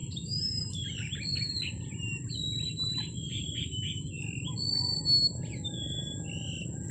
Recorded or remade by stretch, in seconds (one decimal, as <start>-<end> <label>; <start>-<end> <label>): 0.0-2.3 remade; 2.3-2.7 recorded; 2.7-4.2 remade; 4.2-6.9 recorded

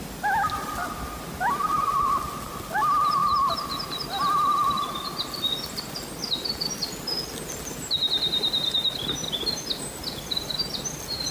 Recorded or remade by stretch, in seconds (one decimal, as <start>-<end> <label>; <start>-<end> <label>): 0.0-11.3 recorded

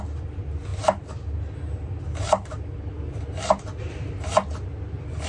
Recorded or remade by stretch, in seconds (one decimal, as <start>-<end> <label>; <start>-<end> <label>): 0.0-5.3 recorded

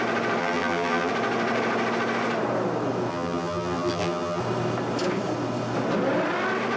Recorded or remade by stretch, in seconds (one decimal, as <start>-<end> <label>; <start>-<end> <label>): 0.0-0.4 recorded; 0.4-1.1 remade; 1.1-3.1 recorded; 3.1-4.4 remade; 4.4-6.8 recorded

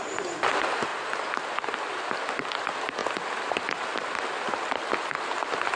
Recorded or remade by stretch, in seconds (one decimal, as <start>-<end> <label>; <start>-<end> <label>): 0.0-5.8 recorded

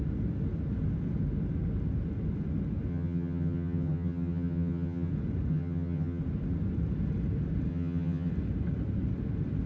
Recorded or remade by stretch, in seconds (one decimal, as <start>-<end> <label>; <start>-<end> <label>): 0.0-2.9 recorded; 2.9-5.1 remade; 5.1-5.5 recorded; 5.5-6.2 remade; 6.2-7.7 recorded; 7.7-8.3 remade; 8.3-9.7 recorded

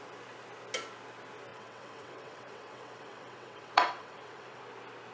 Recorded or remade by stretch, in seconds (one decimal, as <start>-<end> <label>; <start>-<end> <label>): 0.0-1.5 recorded; 1.5-4.6 remade; 4.6-5.1 recorded

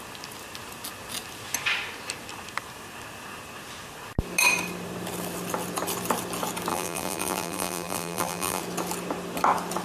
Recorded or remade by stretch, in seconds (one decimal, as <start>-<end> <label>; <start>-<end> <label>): 0.0-6.7 recorded; 6.7-8.6 remade; 8.6-9.8 recorded